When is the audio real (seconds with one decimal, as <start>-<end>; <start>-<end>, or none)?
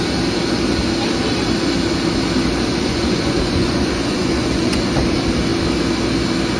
0.0-2.7; 4.8-6.6